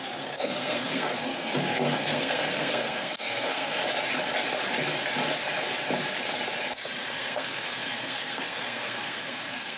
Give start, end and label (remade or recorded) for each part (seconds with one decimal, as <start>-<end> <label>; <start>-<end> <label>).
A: 0.0-3.8 remade; 3.8-7.1 recorded; 7.1-9.8 remade